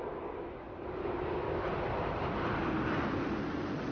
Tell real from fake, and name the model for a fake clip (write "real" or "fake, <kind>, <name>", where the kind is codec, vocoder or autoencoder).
real